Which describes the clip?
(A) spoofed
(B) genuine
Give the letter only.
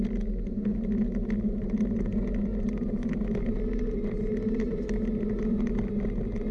B